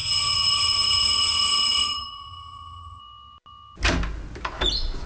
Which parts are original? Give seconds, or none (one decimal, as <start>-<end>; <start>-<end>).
3.0-5.1